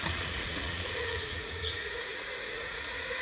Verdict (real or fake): fake